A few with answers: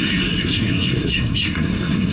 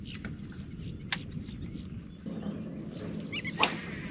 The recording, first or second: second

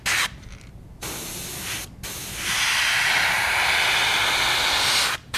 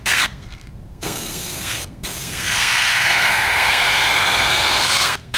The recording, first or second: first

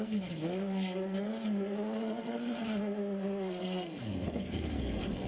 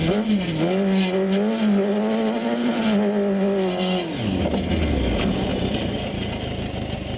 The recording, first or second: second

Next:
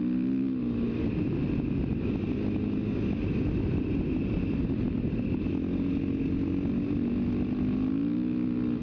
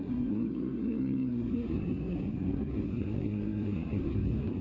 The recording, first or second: first